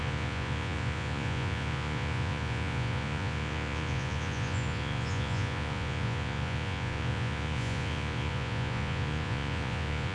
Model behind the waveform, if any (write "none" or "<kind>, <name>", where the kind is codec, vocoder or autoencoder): vocoder, Vocos